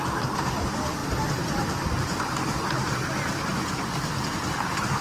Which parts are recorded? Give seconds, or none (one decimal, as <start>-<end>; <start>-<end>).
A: 0.0-5.0